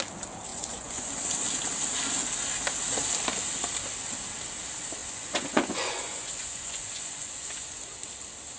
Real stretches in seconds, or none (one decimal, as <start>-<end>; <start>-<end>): 0.0-0.5; 1.1-5.0; 7.9-8.6